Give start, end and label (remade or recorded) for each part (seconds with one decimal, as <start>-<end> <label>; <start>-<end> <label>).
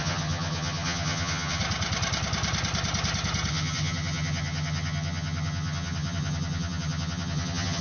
0.0-1.6 remade; 1.6-3.5 recorded; 3.5-7.8 remade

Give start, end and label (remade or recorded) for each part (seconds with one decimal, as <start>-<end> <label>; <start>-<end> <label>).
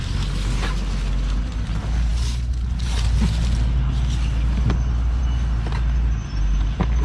0.0-7.0 recorded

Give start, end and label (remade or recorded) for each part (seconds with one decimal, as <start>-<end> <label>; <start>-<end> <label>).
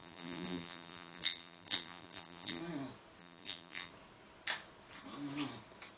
0.0-2.6 remade; 2.6-3.2 recorded; 3.2-3.9 remade; 3.9-6.0 recorded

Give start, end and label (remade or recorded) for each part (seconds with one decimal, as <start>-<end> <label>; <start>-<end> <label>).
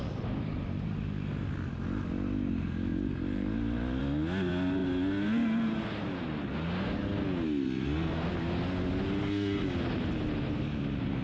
0.0-11.2 recorded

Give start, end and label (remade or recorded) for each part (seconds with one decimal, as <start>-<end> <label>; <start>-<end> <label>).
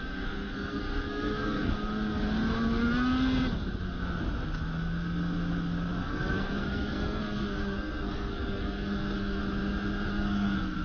0.0-1.9 remade; 1.9-6.0 recorded; 6.0-9.4 remade; 9.4-10.1 recorded; 10.1-10.8 remade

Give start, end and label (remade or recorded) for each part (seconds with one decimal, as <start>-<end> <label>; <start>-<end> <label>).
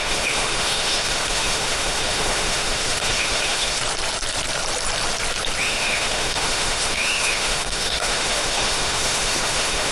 0.0-3.8 remade; 3.8-5.6 recorded; 5.6-9.9 remade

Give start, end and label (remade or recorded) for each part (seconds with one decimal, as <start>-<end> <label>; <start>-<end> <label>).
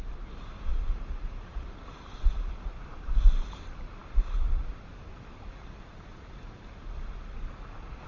0.0-8.1 recorded